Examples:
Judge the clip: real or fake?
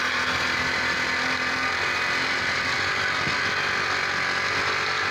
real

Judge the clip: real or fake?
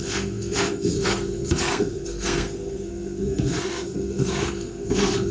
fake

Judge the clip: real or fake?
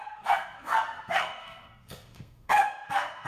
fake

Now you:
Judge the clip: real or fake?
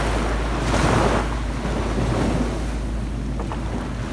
real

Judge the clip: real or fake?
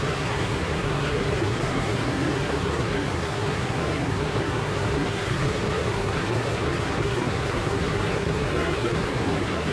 fake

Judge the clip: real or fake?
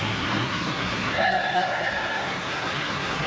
fake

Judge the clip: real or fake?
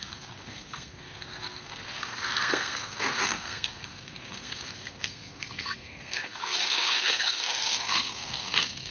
fake